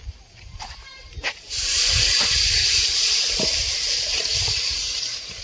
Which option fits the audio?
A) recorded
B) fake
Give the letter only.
B